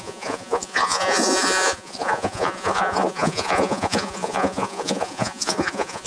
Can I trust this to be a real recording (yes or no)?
no